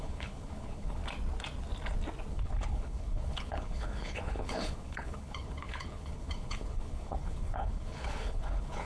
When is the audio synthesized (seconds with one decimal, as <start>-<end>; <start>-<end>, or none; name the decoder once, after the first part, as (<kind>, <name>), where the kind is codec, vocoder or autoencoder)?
0.0-1.0 (codec, HILCodec); 2.3-8.9